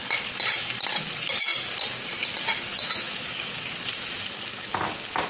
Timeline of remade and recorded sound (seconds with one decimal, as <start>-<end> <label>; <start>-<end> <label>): 0.0-2.7 recorded; 2.7-3.8 remade; 3.8-5.3 recorded